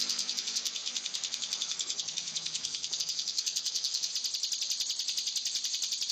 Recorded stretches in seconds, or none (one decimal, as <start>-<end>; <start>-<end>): 4.1-6.1